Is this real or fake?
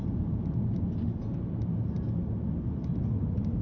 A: real